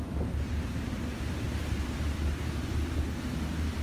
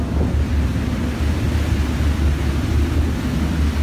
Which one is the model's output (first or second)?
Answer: first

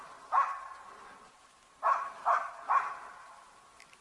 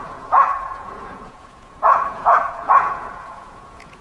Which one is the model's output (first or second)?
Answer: second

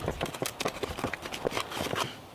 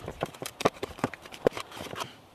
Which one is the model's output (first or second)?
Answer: second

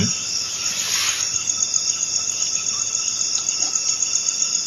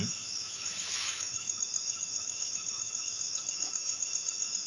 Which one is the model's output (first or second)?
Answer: second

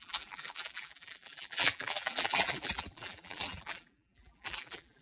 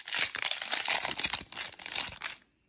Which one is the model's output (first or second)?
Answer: first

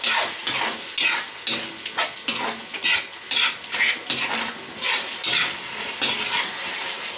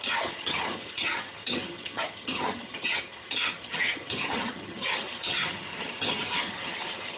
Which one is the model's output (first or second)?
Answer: second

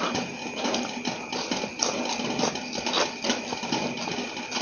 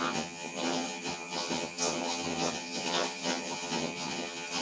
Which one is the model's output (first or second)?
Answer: second